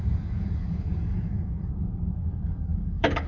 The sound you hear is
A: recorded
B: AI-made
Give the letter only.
B